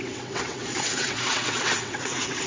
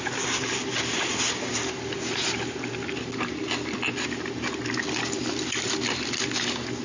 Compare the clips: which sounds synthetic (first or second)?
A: first